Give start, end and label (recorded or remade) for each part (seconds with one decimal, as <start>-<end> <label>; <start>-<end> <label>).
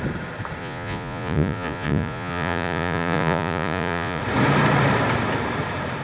0.0-0.6 recorded; 0.6-4.2 remade; 4.2-6.0 recorded